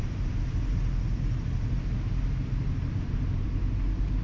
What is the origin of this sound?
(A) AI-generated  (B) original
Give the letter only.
B